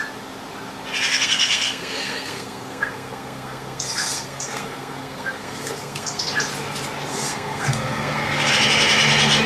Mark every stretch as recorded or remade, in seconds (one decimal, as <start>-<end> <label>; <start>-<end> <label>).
0.0-1.1 recorded; 1.1-6.3 remade; 6.3-7.1 recorded; 7.1-8.5 remade; 8.5-9.5 recorded